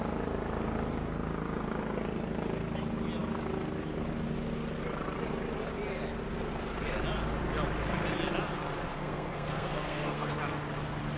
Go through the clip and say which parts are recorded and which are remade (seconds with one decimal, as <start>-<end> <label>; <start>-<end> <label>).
0.0-8.9 recorded; 8.9-10.3 remade; 10.3-11.2 recorded